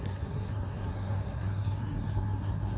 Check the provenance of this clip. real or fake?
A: fake